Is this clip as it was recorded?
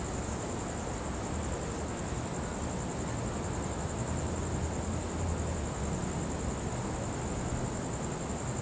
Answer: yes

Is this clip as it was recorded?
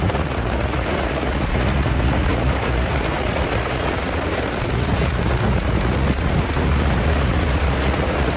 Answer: no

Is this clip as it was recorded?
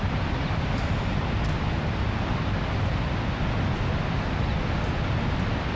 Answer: yes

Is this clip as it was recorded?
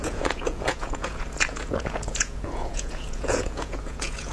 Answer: no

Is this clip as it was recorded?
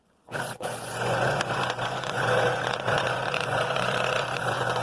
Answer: no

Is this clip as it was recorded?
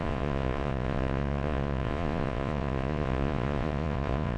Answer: no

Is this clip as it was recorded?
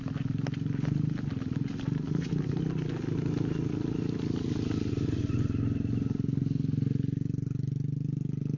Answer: yes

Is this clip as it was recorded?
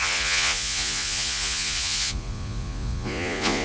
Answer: no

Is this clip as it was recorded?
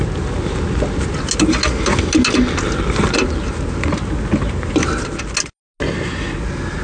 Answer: yes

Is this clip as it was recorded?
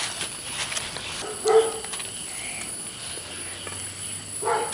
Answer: yes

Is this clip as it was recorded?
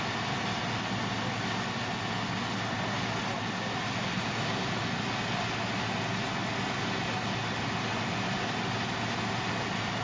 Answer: yes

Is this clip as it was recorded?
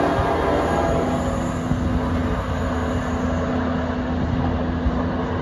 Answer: yes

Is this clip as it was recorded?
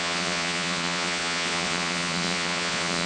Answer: no